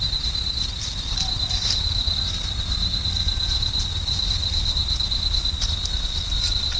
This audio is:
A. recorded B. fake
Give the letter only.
A